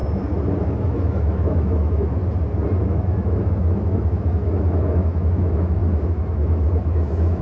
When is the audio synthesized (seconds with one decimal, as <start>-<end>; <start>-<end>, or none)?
0.7-2.2; 2.8-7.4